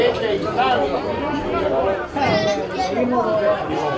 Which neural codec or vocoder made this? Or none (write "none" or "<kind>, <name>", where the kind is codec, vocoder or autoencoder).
none